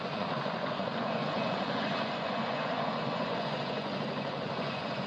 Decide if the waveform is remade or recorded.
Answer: remade